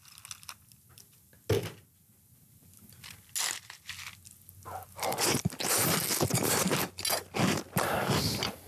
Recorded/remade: recorded